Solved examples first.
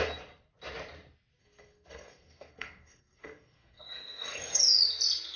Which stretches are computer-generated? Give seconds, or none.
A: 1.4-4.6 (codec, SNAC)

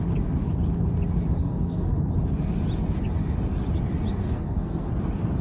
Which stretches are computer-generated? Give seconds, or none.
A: 1.4-2.0 (codec, SNAC); 4.2-4.9

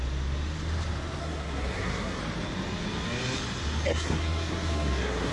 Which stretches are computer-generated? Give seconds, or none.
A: 1.2-2.2 (codec, SNAC); 3.9-5.3